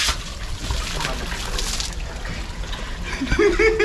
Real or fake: real